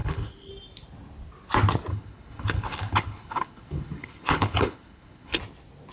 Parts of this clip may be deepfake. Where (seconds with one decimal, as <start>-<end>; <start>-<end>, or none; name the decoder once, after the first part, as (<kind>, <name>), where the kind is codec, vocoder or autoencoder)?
0.0-0.5 (codec, HILCodec); 1.9-5.4